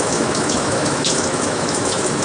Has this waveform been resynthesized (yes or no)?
yes